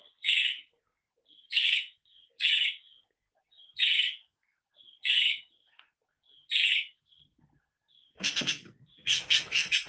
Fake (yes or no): yes